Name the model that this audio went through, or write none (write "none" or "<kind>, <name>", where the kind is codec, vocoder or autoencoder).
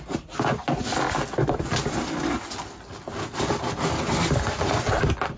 none